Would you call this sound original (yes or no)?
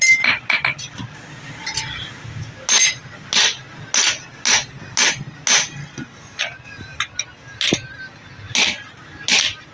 yes